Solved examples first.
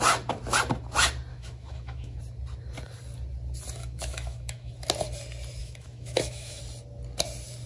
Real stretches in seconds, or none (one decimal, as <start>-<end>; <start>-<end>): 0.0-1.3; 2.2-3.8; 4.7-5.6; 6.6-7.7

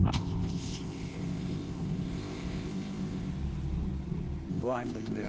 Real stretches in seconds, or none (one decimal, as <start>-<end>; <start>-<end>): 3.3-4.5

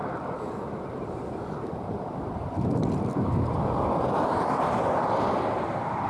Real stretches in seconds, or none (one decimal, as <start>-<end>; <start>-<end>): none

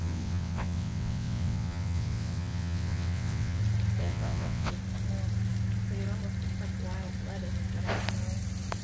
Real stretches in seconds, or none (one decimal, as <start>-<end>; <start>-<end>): 3.6-4.0; 4.7-8.8

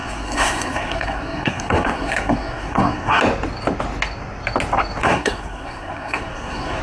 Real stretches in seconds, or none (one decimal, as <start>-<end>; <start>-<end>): 3.2-5.0

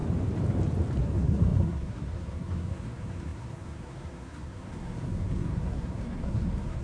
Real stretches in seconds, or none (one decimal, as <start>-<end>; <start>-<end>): 0.0-1.0

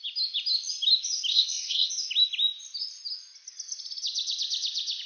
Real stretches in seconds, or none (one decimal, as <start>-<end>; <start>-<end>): 0.0-1.3; 1.9-5.1

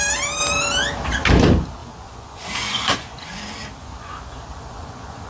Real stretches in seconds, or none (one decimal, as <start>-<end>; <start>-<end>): 0.0-1.8; 3.4-3.8